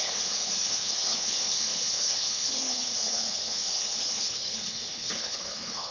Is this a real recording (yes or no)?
no